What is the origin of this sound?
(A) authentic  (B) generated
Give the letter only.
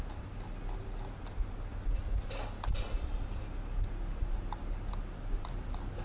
A